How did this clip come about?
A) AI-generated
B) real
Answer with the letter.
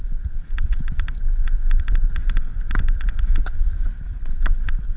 B